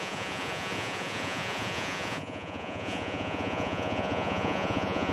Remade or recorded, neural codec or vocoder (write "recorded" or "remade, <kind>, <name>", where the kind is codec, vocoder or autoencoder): remade, vocoder, Vocos